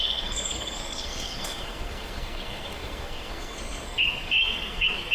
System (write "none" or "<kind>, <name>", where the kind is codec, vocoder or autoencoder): codec, SNAC